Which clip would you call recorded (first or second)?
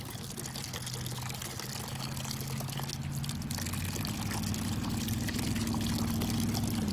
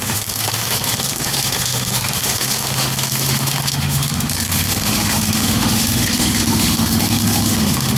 first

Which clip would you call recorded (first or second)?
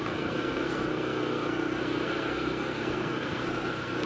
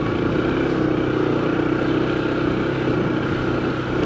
second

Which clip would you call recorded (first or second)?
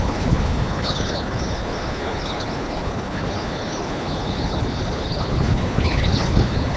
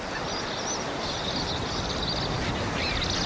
second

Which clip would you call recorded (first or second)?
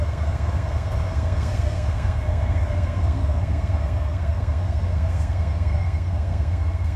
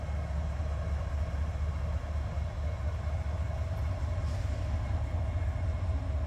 second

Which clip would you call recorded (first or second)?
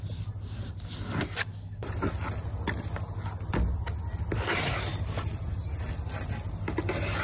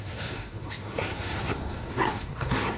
first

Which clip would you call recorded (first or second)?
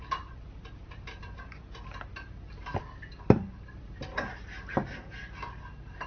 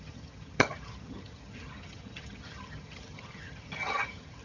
first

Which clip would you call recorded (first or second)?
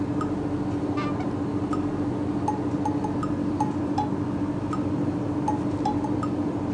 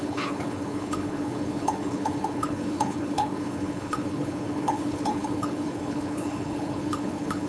first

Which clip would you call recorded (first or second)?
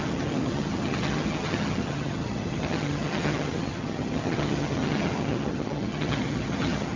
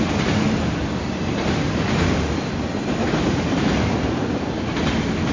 second